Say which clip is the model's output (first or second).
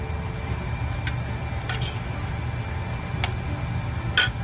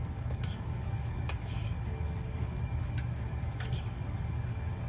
second